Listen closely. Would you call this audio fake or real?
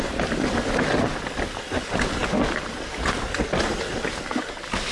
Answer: real